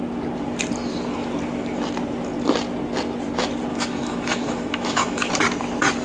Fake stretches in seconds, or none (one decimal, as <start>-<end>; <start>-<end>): 3.7-5.3